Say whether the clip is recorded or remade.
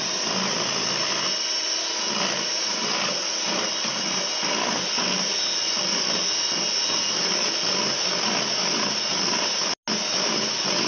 recorded